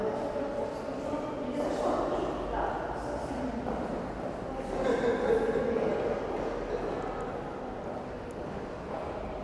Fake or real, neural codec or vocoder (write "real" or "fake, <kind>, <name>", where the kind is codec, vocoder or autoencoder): real